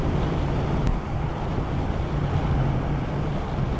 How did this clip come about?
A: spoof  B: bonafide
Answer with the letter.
B